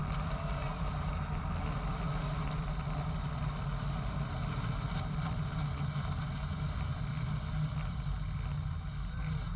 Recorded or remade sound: recorded